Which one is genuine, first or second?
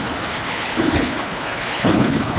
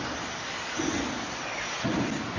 second